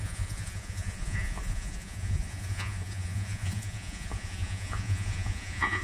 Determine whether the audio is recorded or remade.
remade